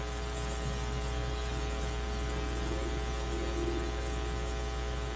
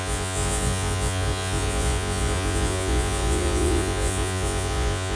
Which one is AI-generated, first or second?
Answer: second